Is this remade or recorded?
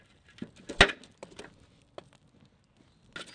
recorded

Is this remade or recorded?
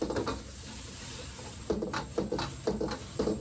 recorded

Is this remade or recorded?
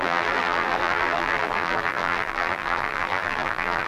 remade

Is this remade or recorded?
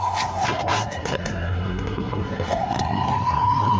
remade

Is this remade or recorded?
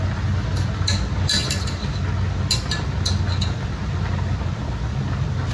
recorded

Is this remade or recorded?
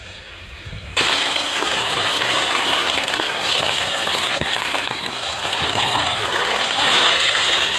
remade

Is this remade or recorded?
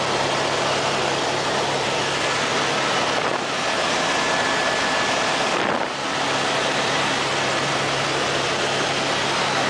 recorded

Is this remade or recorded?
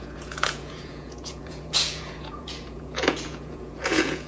remade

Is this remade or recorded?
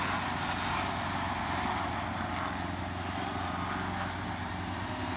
recorded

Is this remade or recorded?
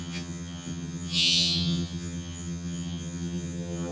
remade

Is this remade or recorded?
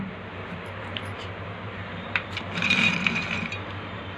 remade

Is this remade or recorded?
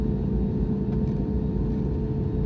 recorded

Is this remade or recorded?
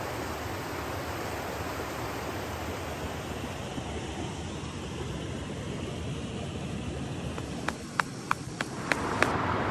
recorded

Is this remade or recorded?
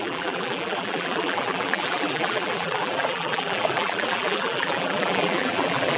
remade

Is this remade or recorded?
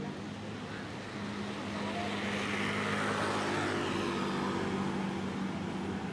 recorded